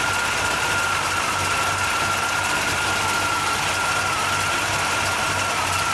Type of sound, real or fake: real